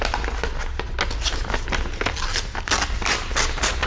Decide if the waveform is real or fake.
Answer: real